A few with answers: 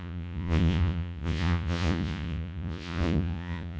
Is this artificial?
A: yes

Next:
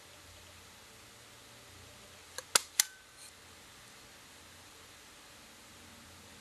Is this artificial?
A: no